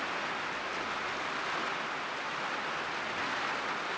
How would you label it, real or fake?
real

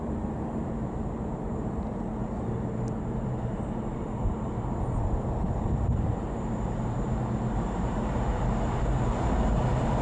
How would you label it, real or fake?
fake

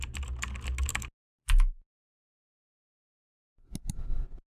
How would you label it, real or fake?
real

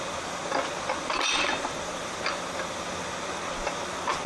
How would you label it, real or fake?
real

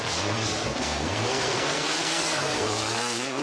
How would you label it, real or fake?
fake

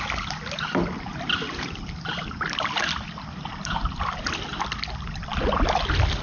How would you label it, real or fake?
real